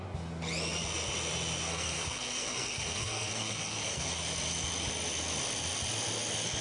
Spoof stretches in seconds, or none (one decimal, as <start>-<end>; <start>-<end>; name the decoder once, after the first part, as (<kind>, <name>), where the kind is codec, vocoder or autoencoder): 1.7-4.2 (codec, SNAC)